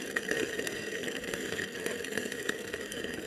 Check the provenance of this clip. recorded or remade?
remade